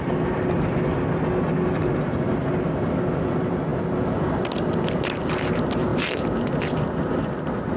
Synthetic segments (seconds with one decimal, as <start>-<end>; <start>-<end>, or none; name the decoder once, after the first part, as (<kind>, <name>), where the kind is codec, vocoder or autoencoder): none

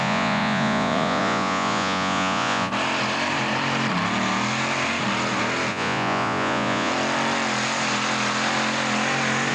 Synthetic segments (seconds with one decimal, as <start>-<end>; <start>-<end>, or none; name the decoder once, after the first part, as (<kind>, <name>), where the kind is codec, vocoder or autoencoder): 0.0-2.7 (vocoder, Vocos); 5.7-6.9

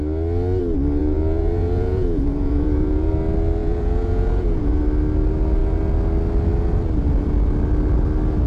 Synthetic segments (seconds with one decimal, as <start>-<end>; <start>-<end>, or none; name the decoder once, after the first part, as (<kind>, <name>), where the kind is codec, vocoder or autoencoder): 1.0-3.1 (vocoder, Vocos); 3.6-4.8

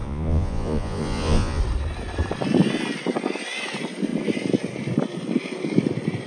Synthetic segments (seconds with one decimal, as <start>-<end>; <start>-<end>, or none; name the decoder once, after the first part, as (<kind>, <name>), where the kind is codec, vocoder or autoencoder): 0.0-1.6 (vocoder, Vocos)

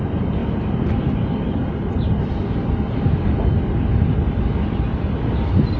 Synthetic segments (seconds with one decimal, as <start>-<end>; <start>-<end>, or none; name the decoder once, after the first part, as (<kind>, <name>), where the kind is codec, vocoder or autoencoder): none

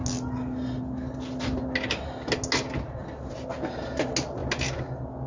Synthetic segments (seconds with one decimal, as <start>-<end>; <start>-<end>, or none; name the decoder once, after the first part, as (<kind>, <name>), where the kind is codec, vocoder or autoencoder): none